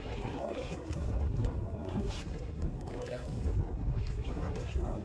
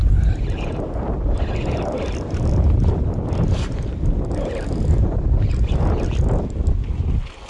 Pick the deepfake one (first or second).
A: first